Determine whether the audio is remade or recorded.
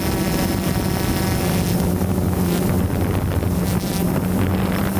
recorded